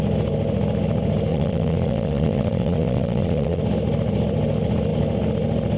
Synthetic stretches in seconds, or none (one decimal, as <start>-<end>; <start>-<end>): 1.3-3.6